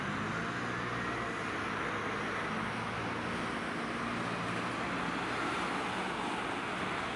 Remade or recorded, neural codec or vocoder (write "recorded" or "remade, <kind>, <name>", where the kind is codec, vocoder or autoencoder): recorded